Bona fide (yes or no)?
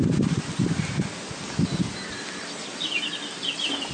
yes